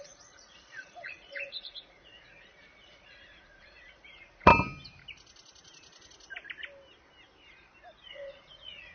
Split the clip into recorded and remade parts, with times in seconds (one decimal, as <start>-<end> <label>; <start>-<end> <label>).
0.0-4.5 remade; 4.5-8.1 recorded; 8.1-8.9 remade